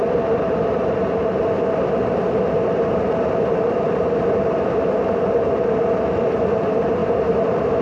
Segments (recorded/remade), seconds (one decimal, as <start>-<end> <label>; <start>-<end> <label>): 0.0-7.8 recorded